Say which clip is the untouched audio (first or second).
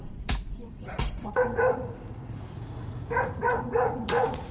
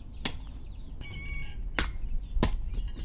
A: second